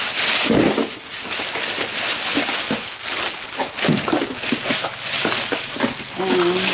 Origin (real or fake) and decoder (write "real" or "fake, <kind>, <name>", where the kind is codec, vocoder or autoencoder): real